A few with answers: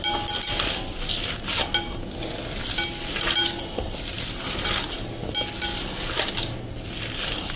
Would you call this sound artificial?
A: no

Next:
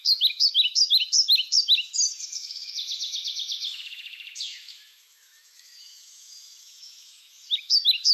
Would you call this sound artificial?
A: yes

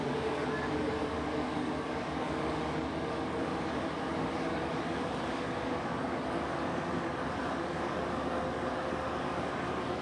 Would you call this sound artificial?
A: yes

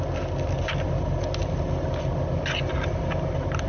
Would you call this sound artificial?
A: no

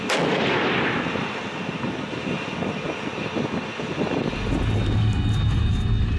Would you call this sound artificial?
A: no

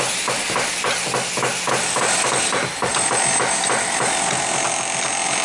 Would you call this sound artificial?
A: no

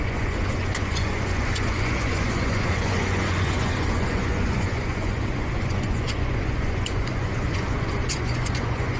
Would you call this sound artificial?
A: yes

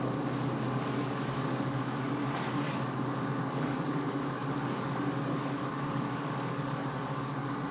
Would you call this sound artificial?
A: yes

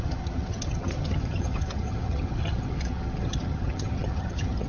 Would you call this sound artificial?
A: yes